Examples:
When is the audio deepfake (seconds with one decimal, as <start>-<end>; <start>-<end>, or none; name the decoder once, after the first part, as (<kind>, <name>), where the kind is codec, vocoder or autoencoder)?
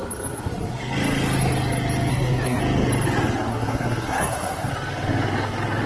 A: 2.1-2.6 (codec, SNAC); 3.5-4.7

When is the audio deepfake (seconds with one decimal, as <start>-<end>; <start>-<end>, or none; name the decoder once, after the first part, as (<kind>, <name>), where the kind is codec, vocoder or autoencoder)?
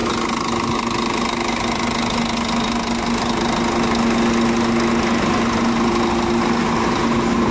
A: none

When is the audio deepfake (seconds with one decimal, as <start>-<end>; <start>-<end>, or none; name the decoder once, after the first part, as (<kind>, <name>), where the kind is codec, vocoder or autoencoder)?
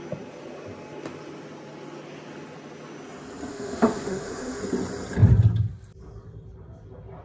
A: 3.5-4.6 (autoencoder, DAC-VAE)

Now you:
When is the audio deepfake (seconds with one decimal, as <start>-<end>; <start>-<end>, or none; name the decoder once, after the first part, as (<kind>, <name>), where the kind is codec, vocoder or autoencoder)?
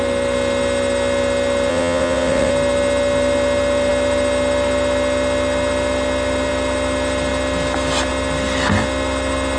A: 1.7-2.5 (vocoder, WaveNeXt)